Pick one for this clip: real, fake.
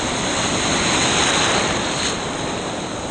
real